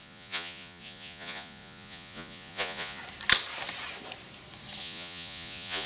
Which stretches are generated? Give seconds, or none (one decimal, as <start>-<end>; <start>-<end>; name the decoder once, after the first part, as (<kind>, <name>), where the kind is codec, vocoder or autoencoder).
0.0-3.0 (vocoder, Vocos); 4.8-5.9